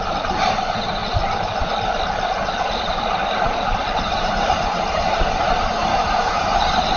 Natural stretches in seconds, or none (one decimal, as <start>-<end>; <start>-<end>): 0.0-5.9; 6.5-7.0